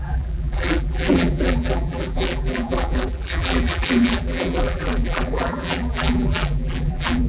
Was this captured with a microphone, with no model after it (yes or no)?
no